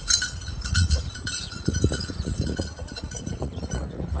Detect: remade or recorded remade